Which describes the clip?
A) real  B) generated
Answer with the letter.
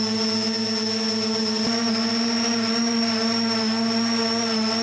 A